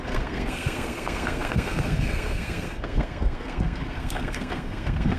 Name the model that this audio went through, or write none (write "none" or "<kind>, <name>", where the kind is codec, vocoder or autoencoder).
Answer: codec, SNAC